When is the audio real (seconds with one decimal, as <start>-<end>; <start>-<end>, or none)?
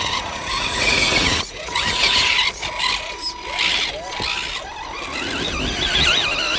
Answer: 2.4-6.6